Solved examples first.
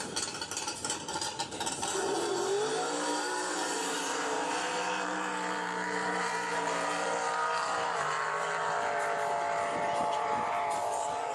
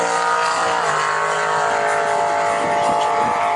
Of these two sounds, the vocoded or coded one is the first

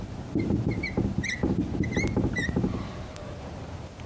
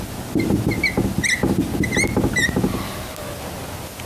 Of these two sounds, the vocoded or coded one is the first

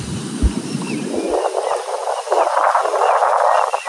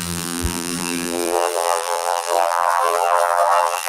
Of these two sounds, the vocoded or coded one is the second